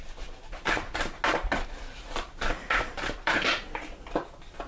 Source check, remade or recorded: recorded